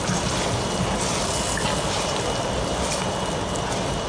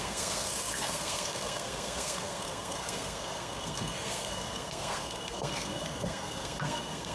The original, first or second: first